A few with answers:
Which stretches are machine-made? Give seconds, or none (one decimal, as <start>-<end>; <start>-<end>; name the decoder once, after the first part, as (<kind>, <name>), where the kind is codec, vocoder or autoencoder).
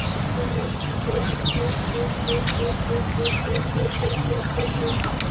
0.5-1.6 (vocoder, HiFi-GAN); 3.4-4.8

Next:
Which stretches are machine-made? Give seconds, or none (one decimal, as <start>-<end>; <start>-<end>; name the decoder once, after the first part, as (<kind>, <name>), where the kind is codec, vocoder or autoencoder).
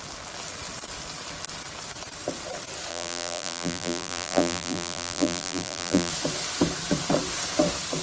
2.9-6.1 (vocoder, BigVGAN v2)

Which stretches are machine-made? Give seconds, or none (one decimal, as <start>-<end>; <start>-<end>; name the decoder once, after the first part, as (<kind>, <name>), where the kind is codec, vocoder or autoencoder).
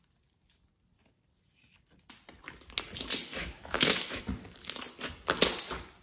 3.3-4.2 (autoencoder, DAC-VAE)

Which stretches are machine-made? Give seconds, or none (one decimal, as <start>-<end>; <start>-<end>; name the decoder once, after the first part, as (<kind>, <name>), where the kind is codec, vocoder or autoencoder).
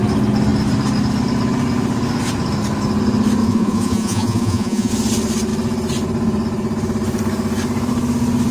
3.4-4.9 (vocoder, Vocos)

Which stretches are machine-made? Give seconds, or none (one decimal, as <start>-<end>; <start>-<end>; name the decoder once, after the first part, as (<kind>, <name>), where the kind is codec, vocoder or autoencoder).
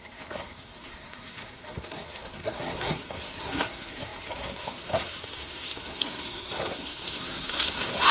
0.0-8.1 (codec, SNAC)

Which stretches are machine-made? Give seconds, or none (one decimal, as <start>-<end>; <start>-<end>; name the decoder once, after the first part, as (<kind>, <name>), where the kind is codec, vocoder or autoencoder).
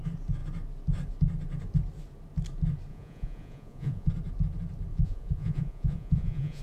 2.9-4.1 (vocoder, Vocos); 4.9-6.6